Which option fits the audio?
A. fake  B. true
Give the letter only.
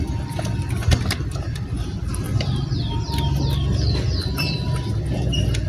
B